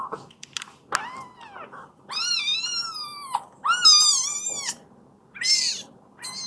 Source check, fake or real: real